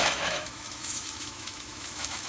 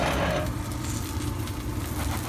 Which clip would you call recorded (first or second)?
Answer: second